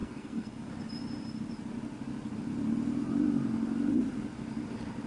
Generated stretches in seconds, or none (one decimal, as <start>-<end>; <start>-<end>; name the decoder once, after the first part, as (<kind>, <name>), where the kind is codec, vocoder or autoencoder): 0.0-0.7 (codec, SNAC)